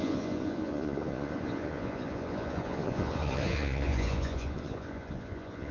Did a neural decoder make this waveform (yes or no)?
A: yes